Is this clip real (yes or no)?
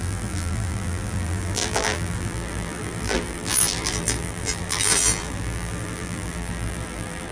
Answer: no